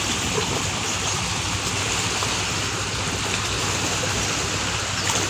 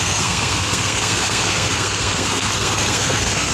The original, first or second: first